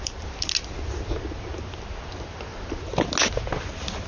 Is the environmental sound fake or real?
real